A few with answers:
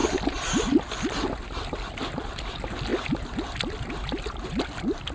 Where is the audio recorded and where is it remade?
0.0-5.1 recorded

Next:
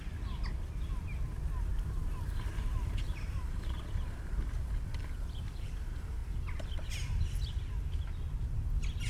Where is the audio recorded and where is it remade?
0.0-1.7 recorded; 1.7-5.7 remade; 5.7-9.1 recorded

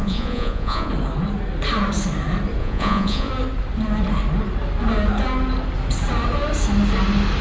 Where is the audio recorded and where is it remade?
0.0-0.9 remade; 0.9-2.6 recorded; 2.6-3.3 remade; 3.3-7.4 recorded